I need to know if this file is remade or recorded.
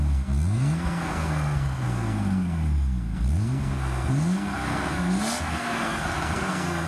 remade